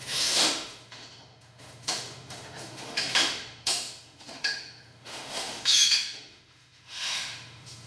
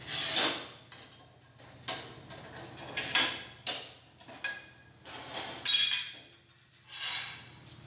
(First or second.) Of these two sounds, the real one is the second